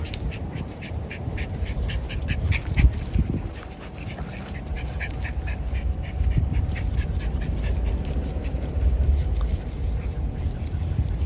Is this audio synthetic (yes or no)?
yes